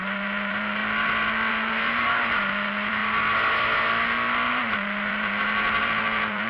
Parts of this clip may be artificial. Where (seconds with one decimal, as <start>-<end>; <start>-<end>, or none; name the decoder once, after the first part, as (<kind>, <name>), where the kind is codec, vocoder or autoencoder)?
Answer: 0.0-0.8 (vocoder, BigVGAN v2); 1.5-3.0; 4.5-6.5

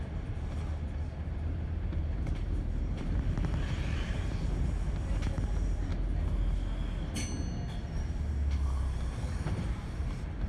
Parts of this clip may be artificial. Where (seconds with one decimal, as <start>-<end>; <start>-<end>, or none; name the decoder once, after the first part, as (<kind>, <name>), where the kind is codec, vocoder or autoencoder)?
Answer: 0.0-5.9 (vocoder, BigVGAN v2); 9.4-10.5

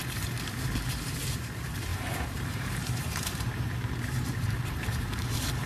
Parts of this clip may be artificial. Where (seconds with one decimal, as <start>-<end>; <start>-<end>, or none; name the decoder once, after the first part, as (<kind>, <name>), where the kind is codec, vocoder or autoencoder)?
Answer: 0.9-5.7 (vocoder, BigVGAN v2)